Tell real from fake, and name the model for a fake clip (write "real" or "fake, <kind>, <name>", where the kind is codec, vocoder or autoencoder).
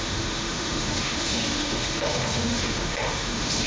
fake, autoencoder, DAC-VAE